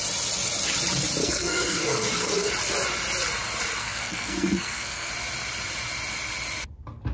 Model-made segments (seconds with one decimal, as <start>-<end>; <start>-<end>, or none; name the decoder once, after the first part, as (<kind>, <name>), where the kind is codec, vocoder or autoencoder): 1.2-2.5 (codec, SNAC); 3.8-5.1

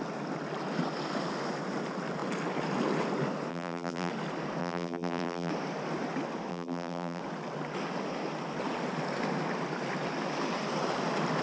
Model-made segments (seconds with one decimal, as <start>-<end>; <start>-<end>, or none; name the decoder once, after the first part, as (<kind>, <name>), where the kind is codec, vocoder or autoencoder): 3.5-4.1 (vocoder, BigVGAN v2); 4.6-5.5; 6.5-7.2

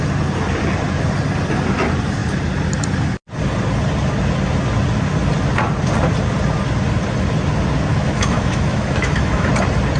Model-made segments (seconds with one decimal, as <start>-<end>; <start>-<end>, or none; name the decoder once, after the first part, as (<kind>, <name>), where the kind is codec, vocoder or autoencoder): 7.9-9.5 (autoencoder, DAC-VAE)